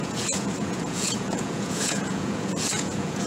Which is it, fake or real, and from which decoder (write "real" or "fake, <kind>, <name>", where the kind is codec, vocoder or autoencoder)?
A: fake, vocoder, Vocos